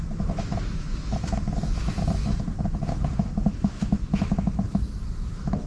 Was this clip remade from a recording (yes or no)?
yes